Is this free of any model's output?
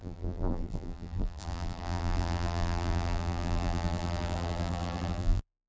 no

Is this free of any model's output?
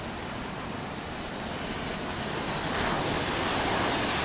yes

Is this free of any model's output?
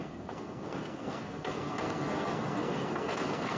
no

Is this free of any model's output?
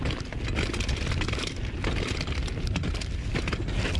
yes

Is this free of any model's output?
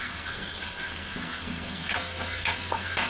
no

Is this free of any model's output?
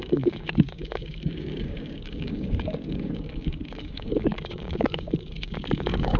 no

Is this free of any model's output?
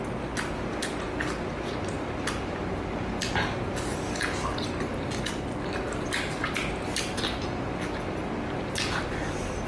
yes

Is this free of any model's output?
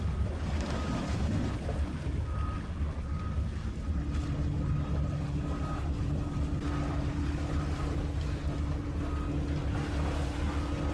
yes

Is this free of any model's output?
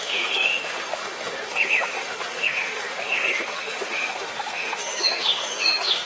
no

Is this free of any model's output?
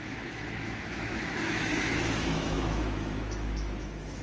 no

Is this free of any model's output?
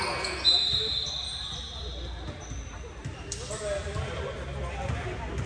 yes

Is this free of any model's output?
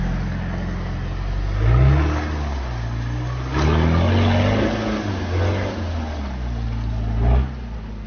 yes